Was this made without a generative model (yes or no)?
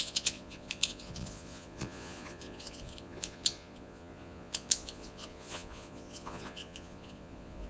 no